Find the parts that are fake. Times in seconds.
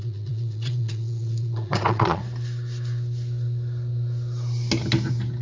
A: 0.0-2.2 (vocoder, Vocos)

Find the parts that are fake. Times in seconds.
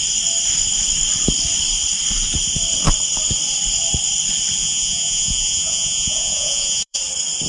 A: 4.6-7.0 (vocoder, Vocos)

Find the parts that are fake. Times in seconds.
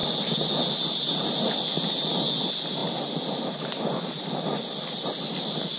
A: none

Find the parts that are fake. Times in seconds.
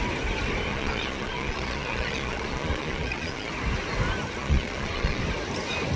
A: 0.7-3.5 (vocoder, Vocos); 4.4-5.2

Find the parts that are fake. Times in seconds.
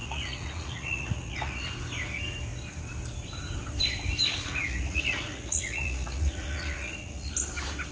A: 0.0-1.7 (vocoder, Vocos); 4.3-7.3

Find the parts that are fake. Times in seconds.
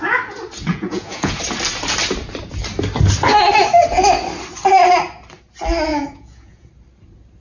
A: 0.7-1.4 (vocoder, Vocos); 5.9-6.7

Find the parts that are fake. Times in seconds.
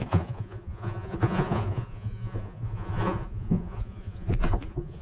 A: 0.0-5.0 (vocoder, Vocos)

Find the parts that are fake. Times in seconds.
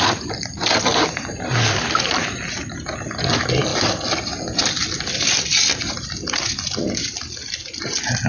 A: none